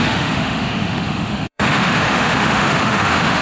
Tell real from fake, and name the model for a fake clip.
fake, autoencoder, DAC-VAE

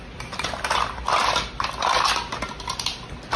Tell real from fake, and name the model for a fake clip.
real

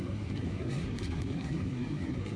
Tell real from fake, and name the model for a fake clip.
fake, codec, SNAC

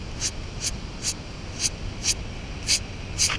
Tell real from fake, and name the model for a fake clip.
real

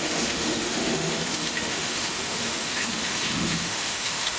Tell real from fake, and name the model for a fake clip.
fake, autoencoder, DAC-VAE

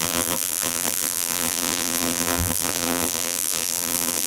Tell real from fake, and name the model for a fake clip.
fake, vocoder, BigVGAN v2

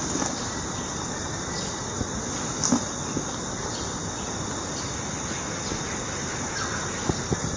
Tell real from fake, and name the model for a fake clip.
real